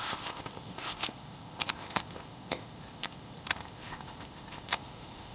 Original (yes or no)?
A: no